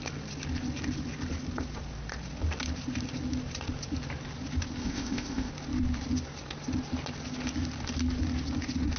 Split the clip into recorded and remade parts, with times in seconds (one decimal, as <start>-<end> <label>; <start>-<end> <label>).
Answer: 0.0-4.8 recorded; 4.8-5.5 remade; 5.5-9.0 recorded